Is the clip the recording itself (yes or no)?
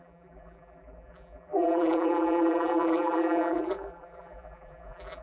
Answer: no